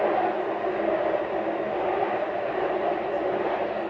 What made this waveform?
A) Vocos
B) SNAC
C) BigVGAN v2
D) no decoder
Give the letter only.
D